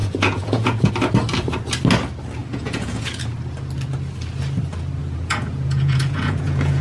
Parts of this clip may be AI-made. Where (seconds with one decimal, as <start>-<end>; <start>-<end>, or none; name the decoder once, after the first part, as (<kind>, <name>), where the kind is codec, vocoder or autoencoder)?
0.0-0.9 (vocoder, Vocos); 2.4-3.2; 5.0-6.8